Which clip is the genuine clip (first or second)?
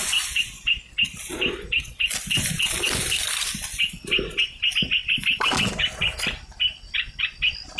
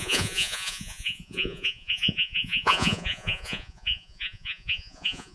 first